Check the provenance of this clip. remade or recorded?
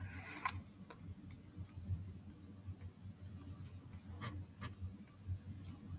recorded